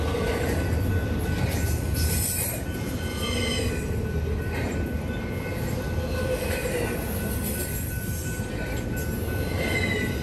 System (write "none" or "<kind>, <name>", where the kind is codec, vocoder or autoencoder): none